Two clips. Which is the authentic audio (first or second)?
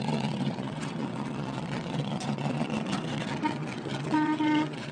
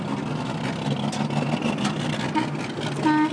second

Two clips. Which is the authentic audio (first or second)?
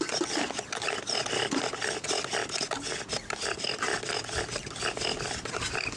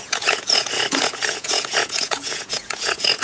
first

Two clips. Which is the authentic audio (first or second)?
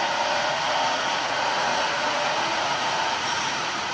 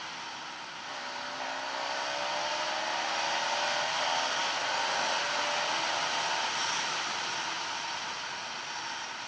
second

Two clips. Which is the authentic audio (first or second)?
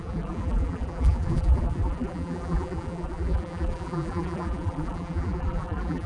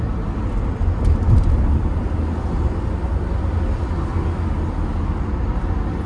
second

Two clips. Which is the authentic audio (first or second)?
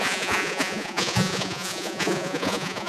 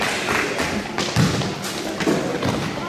second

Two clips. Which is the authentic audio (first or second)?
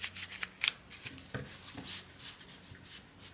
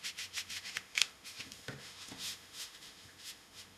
first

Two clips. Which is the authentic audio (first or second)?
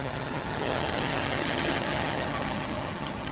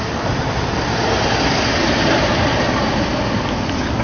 second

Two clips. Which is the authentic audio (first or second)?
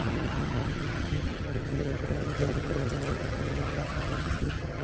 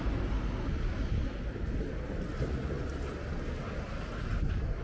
second